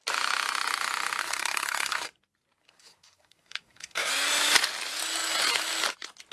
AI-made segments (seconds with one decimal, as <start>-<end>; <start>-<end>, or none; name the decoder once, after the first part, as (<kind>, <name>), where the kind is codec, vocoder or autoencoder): 1.2-2.2 (codec, SNAC); 2.6-4.1